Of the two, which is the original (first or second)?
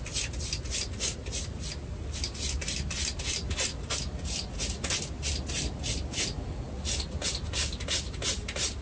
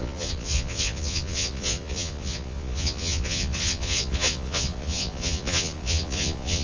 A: first